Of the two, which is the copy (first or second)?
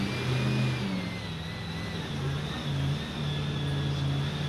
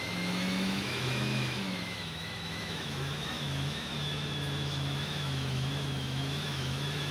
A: second